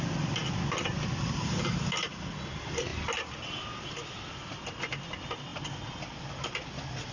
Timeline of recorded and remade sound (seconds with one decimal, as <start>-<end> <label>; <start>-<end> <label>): 0.0-7.1 recorded